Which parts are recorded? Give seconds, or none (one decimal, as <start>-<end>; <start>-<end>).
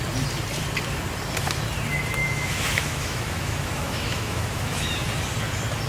0.0-2.2; 4.9-5.9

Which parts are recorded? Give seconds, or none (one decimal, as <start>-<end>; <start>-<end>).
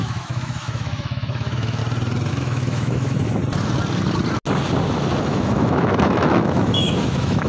1.8-2.3; 3.4-5.2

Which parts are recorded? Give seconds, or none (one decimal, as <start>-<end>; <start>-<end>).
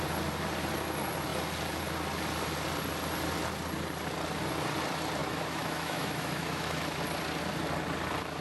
0.0-5.2; 7.0-8.4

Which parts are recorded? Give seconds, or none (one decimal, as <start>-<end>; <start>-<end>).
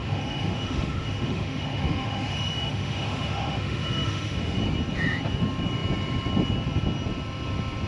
4.6-7.9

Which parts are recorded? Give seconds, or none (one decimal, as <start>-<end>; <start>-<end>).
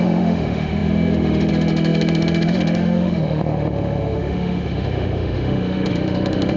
none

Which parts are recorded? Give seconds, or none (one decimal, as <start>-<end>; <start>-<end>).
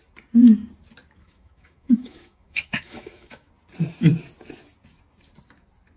0.0-1.2; 3.5-6.0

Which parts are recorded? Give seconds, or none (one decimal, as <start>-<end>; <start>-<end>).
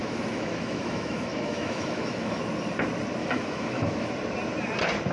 2.4-3.2; 4.1-5.1